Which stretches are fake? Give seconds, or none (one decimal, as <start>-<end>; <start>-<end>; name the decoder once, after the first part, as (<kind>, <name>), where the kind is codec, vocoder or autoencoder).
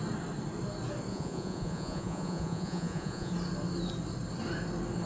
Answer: 1.1-3.3 (vocoder, Vocos)